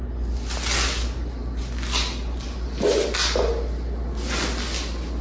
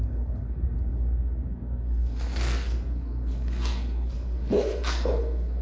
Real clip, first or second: first